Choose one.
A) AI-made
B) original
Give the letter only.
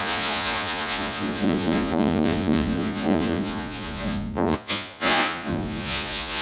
A